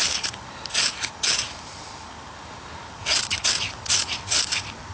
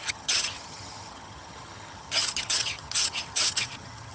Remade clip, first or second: second